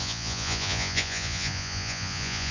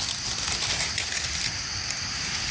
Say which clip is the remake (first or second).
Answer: first